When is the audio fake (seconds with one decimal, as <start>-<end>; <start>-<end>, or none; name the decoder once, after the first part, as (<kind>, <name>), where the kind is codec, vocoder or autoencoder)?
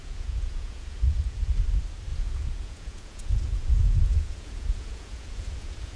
0.0-1.5 (vocoder, Vocos); 2.1-6.0